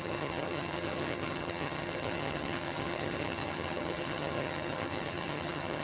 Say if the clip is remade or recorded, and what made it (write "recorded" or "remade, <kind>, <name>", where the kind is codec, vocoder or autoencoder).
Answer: remade, vocoder, HiFi-GAN